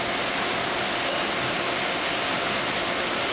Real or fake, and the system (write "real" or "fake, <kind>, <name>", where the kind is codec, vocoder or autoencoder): real